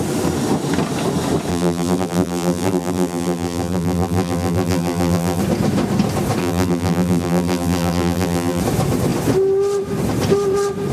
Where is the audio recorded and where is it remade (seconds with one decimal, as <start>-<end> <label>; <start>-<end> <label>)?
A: 0.0-1.5 recorded; 1.5-5.4 remade; 5.4-6.4 recorded; 6.4-8.6 remade; 8.6-10.9 recorded